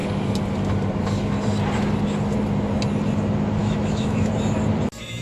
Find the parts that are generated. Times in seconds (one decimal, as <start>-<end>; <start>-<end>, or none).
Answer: 3.6-4.3